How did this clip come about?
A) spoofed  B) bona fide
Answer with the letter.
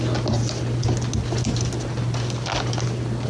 B